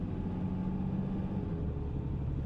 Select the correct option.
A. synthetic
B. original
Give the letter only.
B